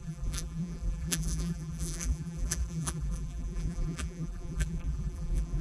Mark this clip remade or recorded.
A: remade